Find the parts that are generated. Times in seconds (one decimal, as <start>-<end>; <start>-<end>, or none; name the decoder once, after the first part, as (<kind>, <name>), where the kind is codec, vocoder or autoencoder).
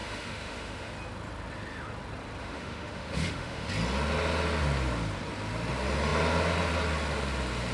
0.0-0.9 (autoencoder, DAC-VAE); 2.4-3.7